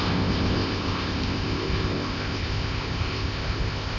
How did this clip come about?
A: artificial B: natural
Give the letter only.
A